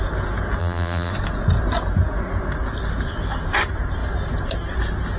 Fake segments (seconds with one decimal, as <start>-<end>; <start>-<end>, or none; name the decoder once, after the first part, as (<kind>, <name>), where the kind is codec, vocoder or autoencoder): 0.6-1.1 (vocoder, BigVGAN v2)